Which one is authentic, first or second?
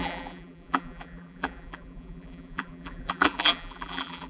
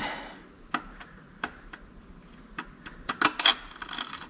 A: second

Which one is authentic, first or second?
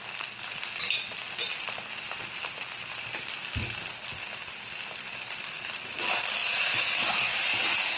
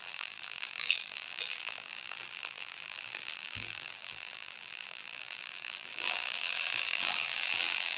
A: first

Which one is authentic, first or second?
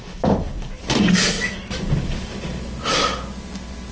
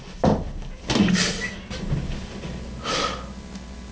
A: second